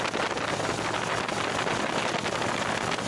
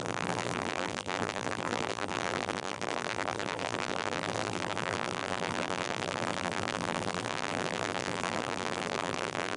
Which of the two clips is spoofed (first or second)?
second